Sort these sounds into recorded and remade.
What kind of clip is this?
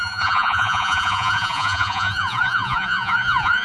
remade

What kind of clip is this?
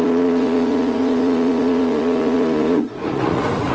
remade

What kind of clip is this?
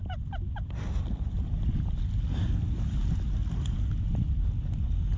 recorded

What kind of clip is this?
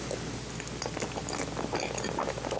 recorded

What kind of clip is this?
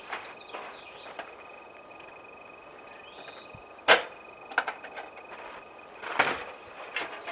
recorded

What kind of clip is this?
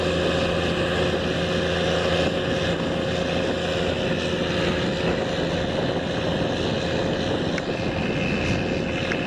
recorded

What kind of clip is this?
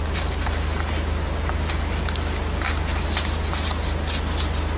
recorded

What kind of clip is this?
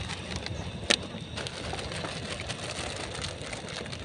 recorded